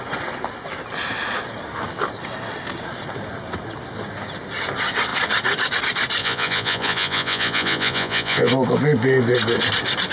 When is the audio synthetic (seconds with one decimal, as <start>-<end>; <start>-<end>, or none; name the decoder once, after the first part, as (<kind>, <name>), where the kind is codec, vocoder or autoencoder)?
6.2-8.5 (vocoder, Vocos)